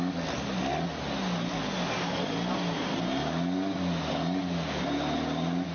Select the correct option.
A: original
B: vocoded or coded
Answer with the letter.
A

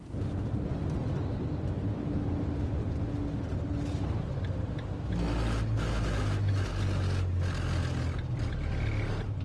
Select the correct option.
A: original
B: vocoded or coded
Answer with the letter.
A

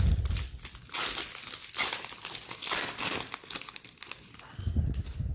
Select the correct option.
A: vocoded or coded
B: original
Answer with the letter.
B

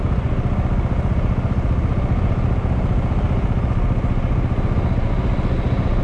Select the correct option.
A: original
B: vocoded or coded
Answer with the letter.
A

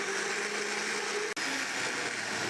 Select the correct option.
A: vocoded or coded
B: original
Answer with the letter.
B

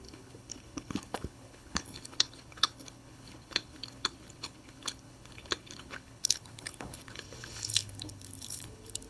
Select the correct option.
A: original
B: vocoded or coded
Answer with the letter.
B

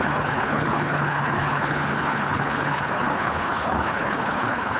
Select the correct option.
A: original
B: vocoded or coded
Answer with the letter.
B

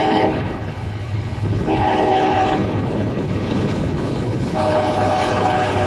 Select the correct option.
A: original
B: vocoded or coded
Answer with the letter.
B